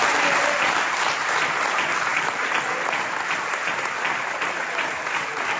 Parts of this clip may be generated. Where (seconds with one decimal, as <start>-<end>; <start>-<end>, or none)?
none